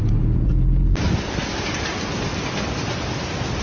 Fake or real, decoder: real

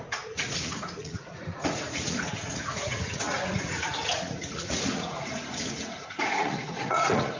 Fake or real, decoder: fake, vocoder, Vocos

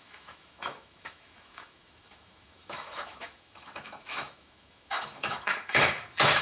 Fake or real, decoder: fake, autoencoder, DAC-VAE